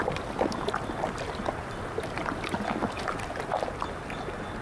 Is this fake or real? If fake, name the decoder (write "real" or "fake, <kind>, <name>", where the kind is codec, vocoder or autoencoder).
real